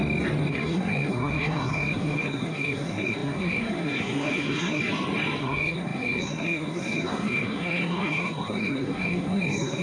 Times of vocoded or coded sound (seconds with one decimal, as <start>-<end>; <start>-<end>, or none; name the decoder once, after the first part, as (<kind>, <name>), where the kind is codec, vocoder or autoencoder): 0.5-4.8 (codec, SNAC); 5.4-9.8

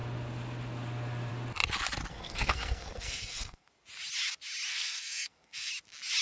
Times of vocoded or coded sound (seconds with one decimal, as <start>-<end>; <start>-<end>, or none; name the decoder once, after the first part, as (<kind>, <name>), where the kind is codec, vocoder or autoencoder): 2.1-3.7 (codec, SNAC); 4.7-5.7

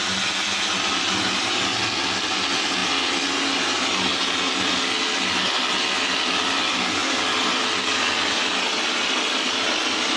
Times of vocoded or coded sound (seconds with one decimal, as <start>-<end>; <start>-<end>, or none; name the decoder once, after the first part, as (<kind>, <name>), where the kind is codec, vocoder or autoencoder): none

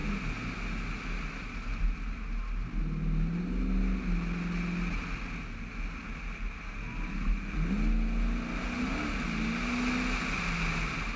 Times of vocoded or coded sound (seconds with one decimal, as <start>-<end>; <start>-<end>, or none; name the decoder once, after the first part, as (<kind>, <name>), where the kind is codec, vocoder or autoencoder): none

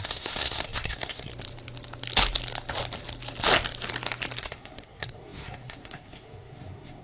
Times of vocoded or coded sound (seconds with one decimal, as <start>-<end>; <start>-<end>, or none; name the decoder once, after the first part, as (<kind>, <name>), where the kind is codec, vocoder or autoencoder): 0.0-1.3 (codec, SNAC); 4.4-7.0

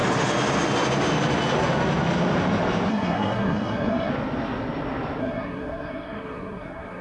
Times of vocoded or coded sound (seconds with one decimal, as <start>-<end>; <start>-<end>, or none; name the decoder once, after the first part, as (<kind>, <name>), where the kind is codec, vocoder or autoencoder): 2.9-4.1 (codec, SNAC); 5.2-7.0

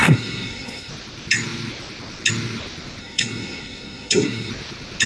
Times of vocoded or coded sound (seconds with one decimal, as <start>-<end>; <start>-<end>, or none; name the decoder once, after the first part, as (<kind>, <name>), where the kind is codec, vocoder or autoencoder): 0.0-0.9 (codec, SNAC); 3.0-4.5